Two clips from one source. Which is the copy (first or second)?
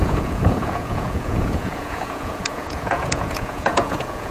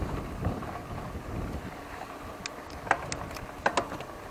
first